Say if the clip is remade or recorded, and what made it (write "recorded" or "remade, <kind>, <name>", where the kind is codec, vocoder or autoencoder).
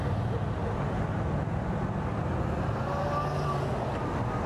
recorded